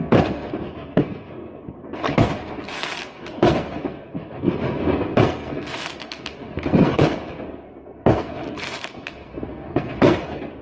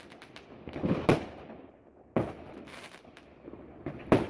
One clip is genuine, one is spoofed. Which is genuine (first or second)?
second